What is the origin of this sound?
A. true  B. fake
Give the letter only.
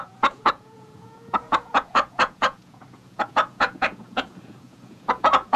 B